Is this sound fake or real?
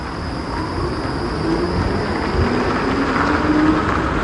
real